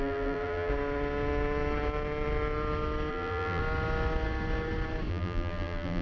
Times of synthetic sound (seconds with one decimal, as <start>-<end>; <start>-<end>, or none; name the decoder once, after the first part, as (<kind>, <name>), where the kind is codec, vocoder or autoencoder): 0.0-0.7 (vocoder, BigVGAN v2); 3.1-3.6; 5.1-6.0